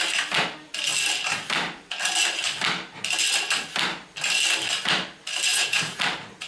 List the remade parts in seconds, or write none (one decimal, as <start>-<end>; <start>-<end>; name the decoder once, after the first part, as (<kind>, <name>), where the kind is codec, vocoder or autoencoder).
5.5-6.0 (vocoder, Vocos)